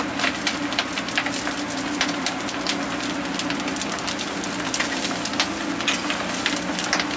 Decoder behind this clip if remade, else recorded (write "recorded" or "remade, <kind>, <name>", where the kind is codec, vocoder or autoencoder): recorded